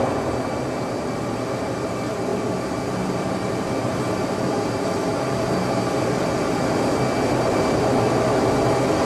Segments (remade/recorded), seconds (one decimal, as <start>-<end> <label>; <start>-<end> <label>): 0.0-9.1 recorded

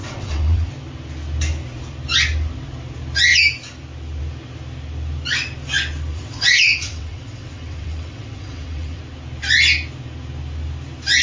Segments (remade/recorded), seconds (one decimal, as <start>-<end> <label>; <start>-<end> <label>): 0.0-0.7 remade; 0.7-6.1 recorded; 6.1-9.0 remade; 9.0-11.2 recorded

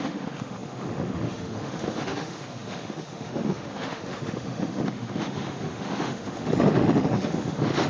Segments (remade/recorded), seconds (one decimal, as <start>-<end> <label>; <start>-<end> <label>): 0.0-7.9 remade

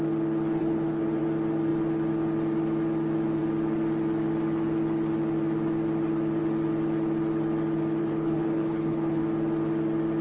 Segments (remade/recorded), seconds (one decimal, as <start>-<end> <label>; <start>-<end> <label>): 0.0-0.6 recorded; 0.6-1.2 remade; 1.2-8.0 recorded; 8.0-9.2 remade; 9.2-10.2 recorded

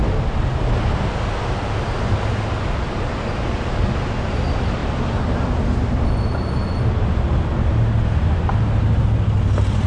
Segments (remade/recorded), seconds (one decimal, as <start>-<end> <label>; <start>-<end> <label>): 0.0-9.9 recorded

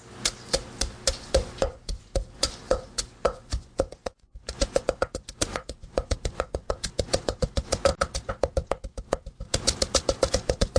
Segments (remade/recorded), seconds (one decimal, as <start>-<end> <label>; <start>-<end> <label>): 0.0-1.1 recorded; 1.1-7.9 remade; 7.9-10.3 recorded; 10.3-10.8 remade

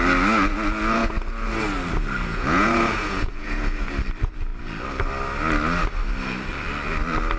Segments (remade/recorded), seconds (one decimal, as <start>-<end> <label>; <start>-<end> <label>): 0.0-2.3 recorded; 2.3-3.9 remade; 3.9-7.4 recorded

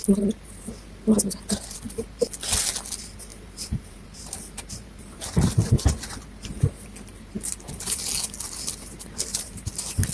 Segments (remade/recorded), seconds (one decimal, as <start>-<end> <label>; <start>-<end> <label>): 0.0-3.3 recorded; 3.3-5.9 remade; 5.9-7.1 recorded; 7.1-8.1 remade; 8.1-9.3 recorded; 9.3-10.1 remade